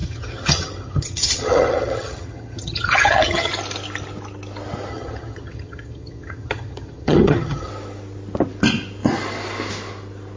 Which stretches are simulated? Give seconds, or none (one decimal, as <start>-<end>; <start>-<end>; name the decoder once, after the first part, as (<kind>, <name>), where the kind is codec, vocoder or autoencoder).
0.0-3.5 (vocoder, HiFi-GAN); 4.9-7.7